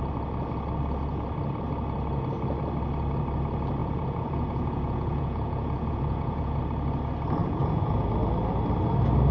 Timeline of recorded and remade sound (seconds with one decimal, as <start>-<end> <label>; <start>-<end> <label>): 0.0-3.8 recorded; 3.8-6.6 remade; 6.6-7.4 recorded; 7.4-8.0 remade; 8.0-9.3 recorded